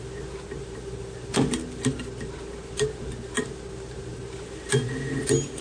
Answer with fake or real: real